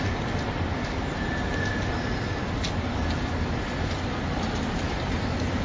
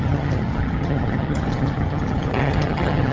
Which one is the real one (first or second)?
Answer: first